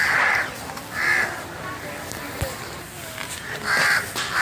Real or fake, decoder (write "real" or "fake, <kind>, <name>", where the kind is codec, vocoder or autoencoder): fake, vocoder, BigVGAN v2